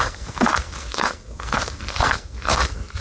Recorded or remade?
remade